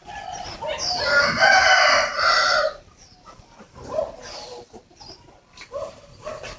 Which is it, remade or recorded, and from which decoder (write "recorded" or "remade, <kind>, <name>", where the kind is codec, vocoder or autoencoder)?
recorded